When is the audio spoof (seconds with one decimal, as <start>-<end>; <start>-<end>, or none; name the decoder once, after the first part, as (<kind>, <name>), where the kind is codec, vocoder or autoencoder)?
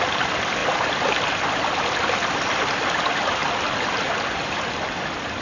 0.0-3.4 (vocoder, BigVGAN v2); 4.0-5.4